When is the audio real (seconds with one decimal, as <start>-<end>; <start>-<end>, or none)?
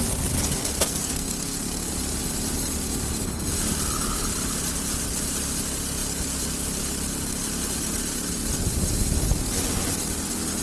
0.0-0.6; 1.9-10.6